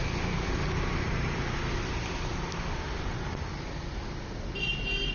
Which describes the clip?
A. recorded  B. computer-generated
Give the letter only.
A